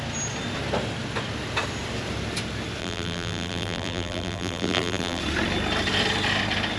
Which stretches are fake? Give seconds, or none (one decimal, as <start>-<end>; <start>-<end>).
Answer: 2.8-5.2